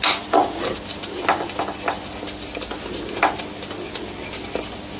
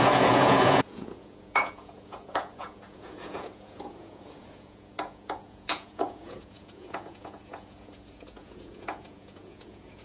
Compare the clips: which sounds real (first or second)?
first